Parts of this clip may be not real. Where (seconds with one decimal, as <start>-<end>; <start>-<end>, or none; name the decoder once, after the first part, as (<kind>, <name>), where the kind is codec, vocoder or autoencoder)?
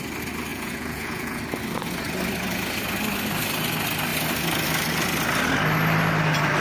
0.5-1.4 (vocoder, Vocos)